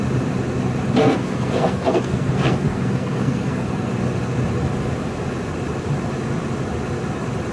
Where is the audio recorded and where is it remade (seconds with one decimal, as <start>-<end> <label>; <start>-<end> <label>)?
0.0-1.0 recorded; 1.0-3.9 remade; 3.9-7.5 recorded